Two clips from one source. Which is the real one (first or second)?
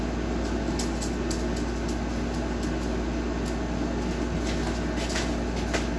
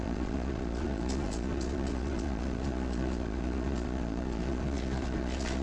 first